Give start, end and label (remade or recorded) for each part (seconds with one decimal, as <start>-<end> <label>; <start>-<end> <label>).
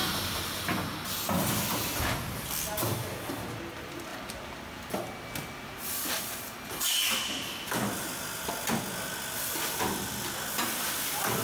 0.0-11.4 recorded